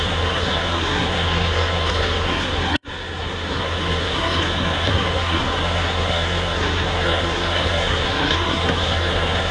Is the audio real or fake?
fake